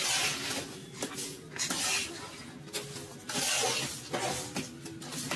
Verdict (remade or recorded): recorded